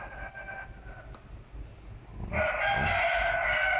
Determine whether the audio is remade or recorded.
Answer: recorded